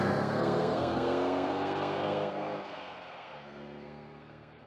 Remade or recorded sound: remade